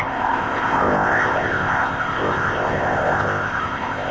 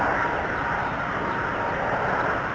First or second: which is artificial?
first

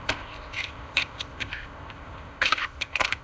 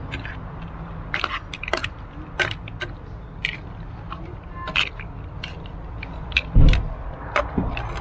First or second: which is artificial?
first